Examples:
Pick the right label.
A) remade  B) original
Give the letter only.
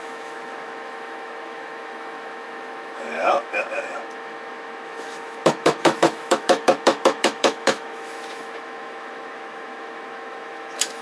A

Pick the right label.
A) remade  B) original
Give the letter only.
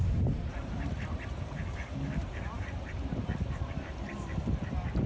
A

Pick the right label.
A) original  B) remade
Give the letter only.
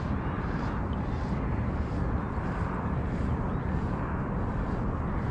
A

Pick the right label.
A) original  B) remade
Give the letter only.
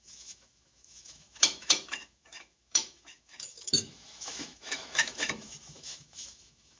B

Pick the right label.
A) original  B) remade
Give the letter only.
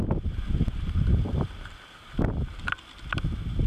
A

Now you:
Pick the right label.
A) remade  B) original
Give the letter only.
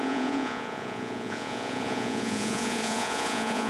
A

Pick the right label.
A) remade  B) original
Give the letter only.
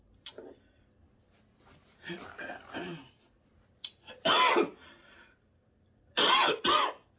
B